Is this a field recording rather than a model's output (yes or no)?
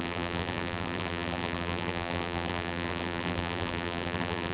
no